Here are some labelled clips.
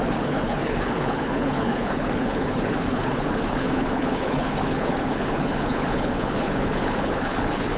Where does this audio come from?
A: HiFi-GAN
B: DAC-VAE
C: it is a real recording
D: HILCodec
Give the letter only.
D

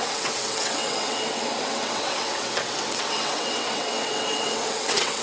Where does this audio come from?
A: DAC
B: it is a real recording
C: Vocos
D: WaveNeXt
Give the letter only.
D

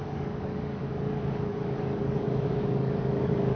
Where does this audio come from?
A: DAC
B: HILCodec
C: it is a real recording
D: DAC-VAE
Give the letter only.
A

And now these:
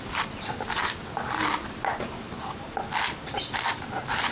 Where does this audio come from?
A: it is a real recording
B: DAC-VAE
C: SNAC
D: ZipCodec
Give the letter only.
A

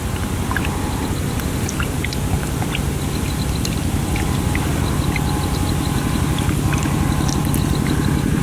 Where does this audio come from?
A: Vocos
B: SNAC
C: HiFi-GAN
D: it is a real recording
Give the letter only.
D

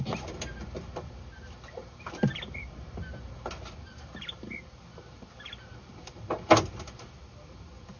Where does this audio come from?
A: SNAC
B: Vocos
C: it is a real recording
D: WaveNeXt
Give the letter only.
C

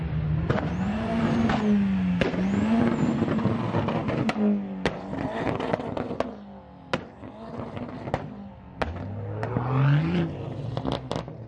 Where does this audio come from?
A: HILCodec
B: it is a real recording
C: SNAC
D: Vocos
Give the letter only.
B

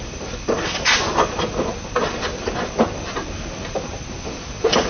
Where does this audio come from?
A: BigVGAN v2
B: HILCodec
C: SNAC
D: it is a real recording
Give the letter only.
D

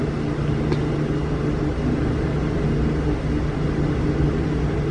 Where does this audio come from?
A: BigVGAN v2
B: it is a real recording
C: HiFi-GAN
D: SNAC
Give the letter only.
B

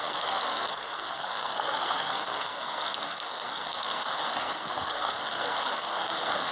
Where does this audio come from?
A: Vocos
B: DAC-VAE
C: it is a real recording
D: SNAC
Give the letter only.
D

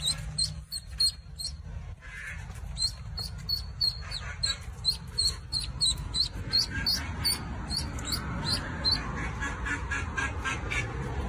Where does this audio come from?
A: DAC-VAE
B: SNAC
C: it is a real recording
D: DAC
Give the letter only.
C